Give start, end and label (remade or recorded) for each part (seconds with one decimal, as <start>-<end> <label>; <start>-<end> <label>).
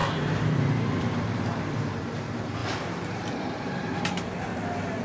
0.0-4.5 remade; 4.5-5.0 recorded